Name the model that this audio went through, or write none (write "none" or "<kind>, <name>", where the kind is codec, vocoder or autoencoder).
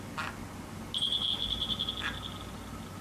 none